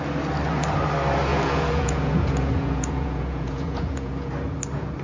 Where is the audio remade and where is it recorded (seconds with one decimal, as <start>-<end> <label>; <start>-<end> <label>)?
0.0-1.3 recorded; 1.3-4.3 remade; 4.3-5.0 recorded